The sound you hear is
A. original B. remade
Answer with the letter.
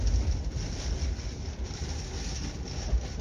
A